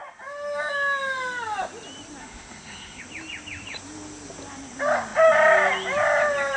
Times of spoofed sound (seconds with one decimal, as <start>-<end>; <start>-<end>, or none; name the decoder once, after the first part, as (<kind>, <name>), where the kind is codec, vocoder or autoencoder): 2.2-3.0 (autoencoder, DAC-VAE)